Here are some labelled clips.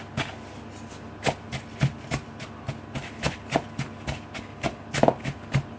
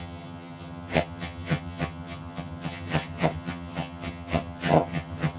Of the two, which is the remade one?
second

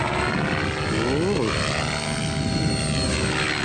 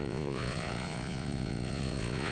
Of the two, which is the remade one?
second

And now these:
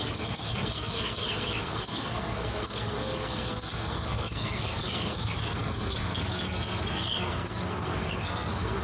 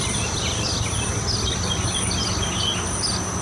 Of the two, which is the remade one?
first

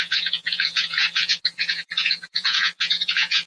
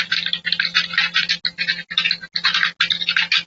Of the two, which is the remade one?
first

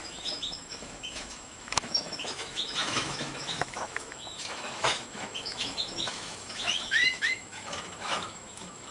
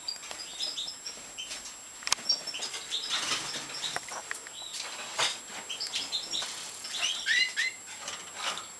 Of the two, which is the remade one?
first